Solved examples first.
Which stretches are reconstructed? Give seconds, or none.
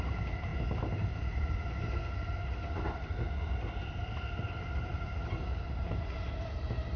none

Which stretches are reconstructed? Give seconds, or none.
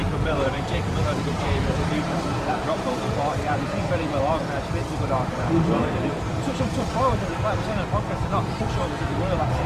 0.0-4.2 (vocoder, BigVGAN v2); 4.8-7.0